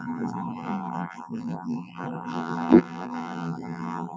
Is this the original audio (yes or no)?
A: no